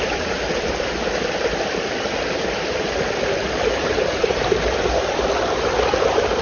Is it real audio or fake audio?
fake